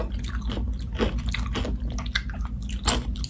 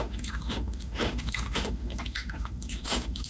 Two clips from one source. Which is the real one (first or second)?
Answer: first